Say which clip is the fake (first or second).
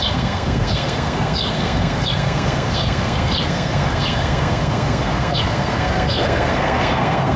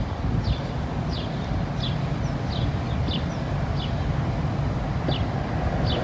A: first